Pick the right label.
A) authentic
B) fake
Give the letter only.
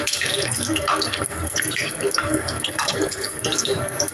B